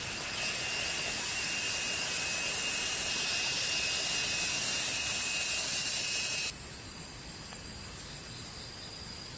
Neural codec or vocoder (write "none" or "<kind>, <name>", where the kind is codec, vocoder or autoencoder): none